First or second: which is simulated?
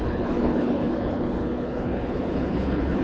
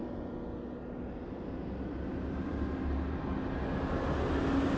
first